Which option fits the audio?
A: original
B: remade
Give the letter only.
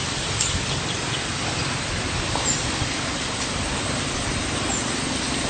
A